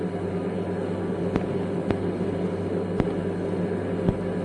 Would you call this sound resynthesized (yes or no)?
no